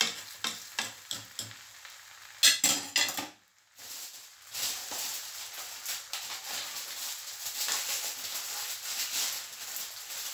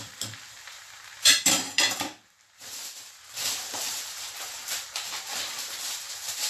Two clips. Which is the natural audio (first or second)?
first